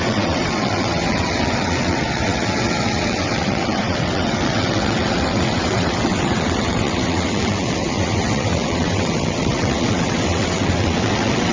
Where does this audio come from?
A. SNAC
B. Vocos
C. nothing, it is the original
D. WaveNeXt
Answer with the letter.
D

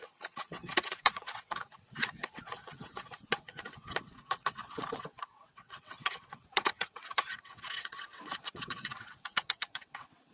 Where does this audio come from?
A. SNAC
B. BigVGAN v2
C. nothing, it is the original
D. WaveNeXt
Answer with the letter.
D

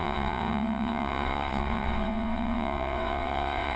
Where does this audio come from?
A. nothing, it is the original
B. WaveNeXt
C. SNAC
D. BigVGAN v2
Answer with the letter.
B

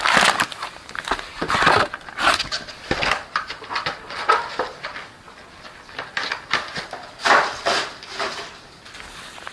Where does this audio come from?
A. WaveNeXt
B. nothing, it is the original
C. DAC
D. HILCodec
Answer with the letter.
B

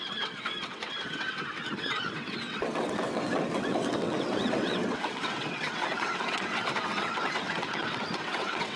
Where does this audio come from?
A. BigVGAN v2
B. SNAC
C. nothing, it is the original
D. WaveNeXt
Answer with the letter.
D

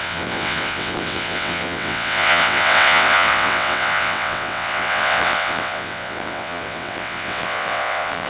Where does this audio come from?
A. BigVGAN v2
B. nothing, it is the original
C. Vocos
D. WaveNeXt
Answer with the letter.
D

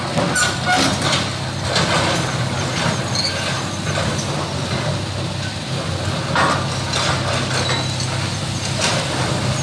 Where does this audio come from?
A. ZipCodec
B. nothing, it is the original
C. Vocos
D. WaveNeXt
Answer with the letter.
B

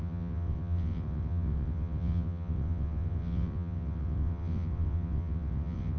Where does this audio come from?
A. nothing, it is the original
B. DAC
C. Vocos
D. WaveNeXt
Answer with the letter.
D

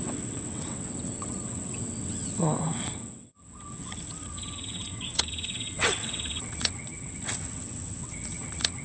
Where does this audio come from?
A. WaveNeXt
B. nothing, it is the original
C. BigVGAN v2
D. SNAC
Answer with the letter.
A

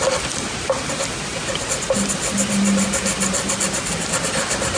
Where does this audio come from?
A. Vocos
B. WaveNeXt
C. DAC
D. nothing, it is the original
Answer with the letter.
D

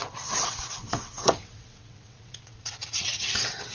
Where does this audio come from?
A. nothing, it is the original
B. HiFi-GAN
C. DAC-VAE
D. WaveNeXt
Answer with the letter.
D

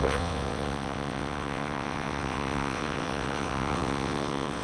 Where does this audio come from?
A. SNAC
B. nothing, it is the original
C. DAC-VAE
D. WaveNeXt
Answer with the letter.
D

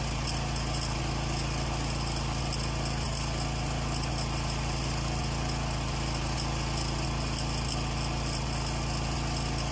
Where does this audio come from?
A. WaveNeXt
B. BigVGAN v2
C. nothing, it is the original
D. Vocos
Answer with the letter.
C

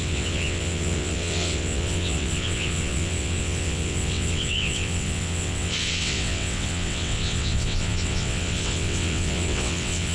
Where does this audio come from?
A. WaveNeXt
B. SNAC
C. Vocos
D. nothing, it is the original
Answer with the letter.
A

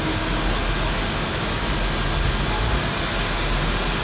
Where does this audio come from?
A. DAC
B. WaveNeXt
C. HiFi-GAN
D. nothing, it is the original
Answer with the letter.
D